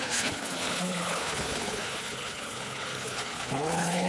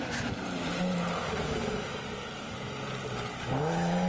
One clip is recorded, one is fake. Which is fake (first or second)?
first